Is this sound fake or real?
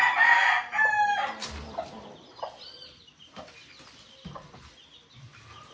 real